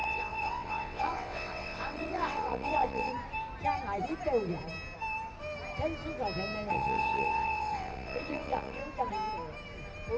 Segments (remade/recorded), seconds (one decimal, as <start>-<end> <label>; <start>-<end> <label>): 0.0-3.1 remade; 3.1-6.7 recorded; 6.7-8.8 remade; 8.8-10.2 recorded